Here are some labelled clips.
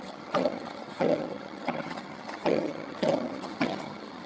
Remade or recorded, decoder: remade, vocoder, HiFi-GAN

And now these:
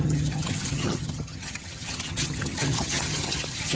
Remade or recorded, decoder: remade, vocoder, HiFi-GAN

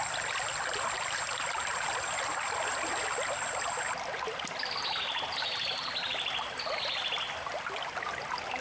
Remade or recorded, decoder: recorded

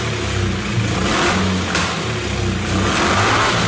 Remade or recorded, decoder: recorded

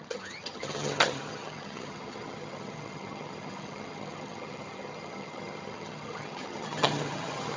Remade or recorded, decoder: remade, vocoder, HiFi-GAN